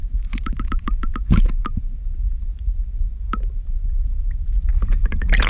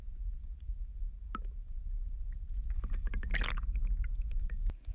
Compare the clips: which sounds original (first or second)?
second